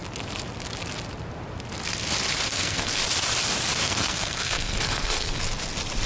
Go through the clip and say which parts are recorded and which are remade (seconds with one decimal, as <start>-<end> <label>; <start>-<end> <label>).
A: 0.0-2.5 recorded; 2.5-3.0 remade; 3.0-3.8 recorded; 3.8-5.4 remade; 5.4-6.1 recorded